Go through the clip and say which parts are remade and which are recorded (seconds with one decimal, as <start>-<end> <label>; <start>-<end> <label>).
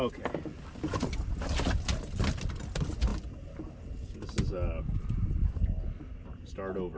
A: 0.0-7.0 recorded